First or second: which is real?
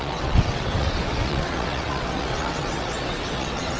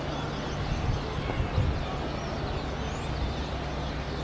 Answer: second